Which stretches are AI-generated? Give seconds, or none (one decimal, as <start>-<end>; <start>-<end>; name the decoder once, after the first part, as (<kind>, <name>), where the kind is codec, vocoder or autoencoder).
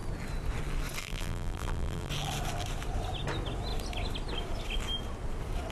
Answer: 1.0-2.1 (vocoder, BigVGAN v2)